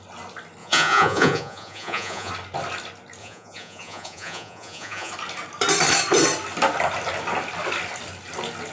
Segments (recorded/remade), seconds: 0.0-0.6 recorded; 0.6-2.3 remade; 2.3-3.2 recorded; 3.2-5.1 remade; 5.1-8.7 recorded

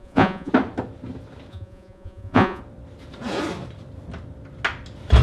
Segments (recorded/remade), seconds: 0.0-0.5 remade; 0.5-1.5 recorded; 1.5-2.6 remade; 2.6-5.2 recorded

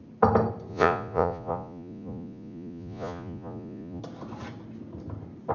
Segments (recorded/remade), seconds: 0.0-0.7 recorded; 0.7-4.0 remade; 4.0-5.5 recorded

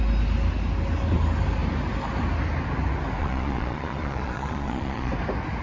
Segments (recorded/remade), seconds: 0.0-3.2 recorded; 3.2-5.1 remade; 5.1-5.6 recorded

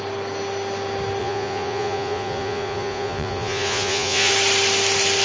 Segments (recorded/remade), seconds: 0.0-1.2 recorded; 1.2-4.3 remade; 4.3-5.2 recorded

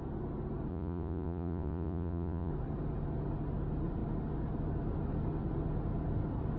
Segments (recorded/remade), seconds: 0.0-0.7 recorded; 0.7-2.5 remade; 2.5-6.6 recorded